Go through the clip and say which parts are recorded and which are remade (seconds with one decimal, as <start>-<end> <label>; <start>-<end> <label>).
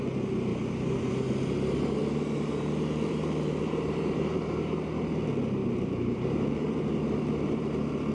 0.0-2.0 recorded; 2.0-4.4 remade; 4.4-5.6 recorded; 5.6-6.8 remade; 6.8-8.1 recorded